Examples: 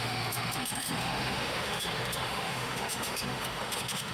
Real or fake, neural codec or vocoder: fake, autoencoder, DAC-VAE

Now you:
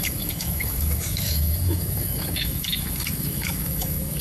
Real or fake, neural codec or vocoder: fake, autoencoder, DAC-VAE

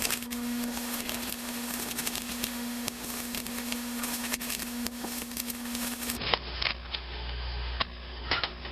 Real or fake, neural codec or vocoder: fake, autoencoder, DAC-VAE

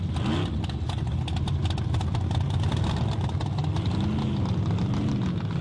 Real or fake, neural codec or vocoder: real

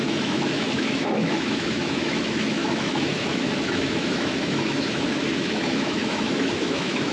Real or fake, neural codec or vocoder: fake, autoencoder, DAC-VAE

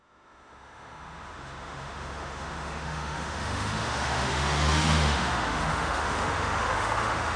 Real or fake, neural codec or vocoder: fake, autoencoder, DAC-VAE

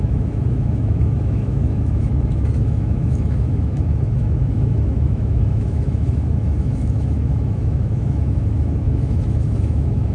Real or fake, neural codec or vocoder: fake, autoencoder, DAC-VAE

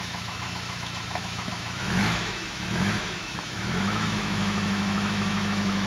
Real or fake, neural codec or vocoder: fake, autoencoder, DAC-VAE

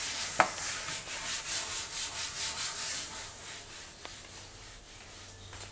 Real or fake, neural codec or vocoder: real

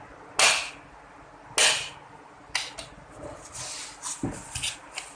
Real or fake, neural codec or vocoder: real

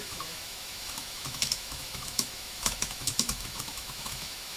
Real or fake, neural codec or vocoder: fake, autoencoder, DAC-VAE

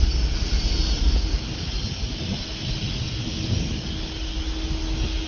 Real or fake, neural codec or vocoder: real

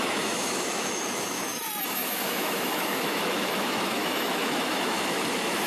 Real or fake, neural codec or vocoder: fake, autoencoder, DAC-VAE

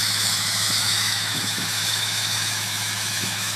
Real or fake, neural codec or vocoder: fake, autoencoder, DAC-VAE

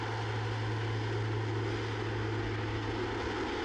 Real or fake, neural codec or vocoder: real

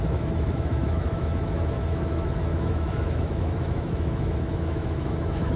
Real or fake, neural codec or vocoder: fake, autoencoder, DAC-VAE